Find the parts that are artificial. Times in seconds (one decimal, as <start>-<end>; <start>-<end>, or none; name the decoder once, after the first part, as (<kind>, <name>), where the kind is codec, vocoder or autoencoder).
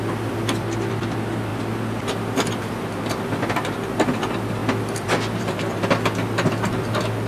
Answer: none